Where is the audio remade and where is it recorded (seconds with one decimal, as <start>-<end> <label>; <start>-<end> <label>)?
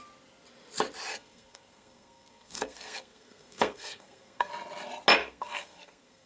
0.0-1.1 recorded; 1.1-4.5 remade; 4.5-5.2 recorded; 5.2-6.3 remade